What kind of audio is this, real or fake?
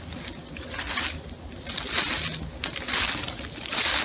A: real